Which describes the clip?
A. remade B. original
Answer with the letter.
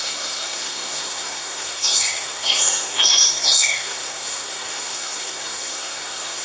A